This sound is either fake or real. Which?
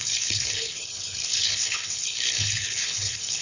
fake